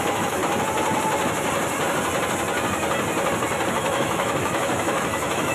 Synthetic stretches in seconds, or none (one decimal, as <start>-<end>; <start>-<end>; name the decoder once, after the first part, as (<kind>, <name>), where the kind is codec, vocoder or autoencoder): 0.0-0.4 (autoencoder, DAC-VAE); 3.7-5.5